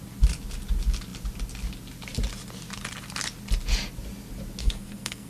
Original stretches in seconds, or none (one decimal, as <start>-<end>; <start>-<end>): 0.0-4.6